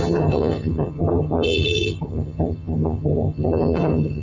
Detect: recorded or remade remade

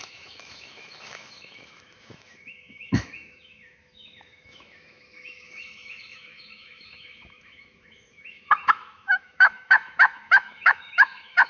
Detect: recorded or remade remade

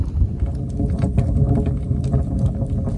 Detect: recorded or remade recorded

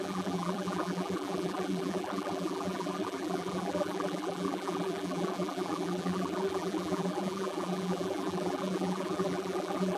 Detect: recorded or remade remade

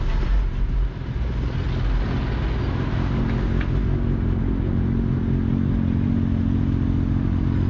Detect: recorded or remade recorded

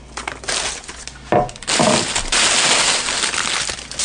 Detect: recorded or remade recorded